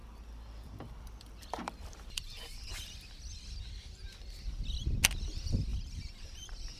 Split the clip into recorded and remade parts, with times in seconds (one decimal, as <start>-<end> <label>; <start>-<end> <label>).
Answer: 0.0-4.0 remade; 4.0-5.7 recorded; 5.7-6.8 remade